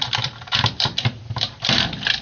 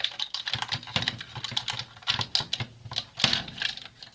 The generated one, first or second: first